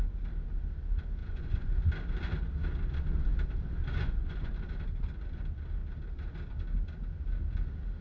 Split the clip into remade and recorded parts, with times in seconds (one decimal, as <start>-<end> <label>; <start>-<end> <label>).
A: 0.0-1.2 recorded; 1.2-1.9 remade; 1.9-3.8 recorded; 3.8-4.5 remade; 4.5-8.0 recorded

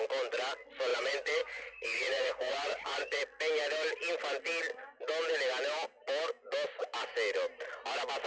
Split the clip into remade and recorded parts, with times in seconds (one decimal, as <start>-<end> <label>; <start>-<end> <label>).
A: 0.0-0.9 recorded; 0.9-3.2 remade; 3.2-8.3 recorded

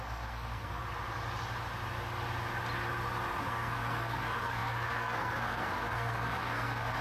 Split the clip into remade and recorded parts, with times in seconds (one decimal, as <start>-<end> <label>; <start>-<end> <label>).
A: 0.0-0.8 remade; 0.8-3.4 recorded; 3.4-7.0 remade

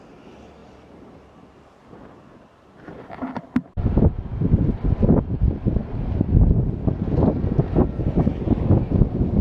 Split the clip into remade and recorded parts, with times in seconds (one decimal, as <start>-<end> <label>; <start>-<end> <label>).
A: 0.0-9.4 recorded

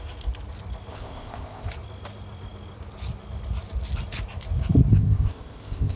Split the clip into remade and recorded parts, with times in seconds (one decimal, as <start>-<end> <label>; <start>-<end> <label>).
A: 0.0-0.9 recorded; 0.9-1.7 remade; 1.7-4.9 recorded; 4.9-6.0 remade